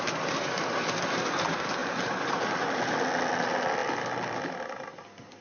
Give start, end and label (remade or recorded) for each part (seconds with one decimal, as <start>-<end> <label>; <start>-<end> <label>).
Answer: 0.0-1.8 recorded; 1.8-2.9 remade; 2.9-5.4 recorded